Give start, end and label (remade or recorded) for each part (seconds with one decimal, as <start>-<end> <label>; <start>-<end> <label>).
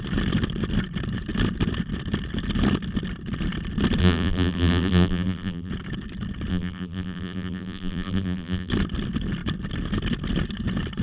0.0-4.0 recorded; 4.0-5.7 remade; 5.7-6.5 recorded; 6.5-8.7 remade; 8.7-11.0 recorded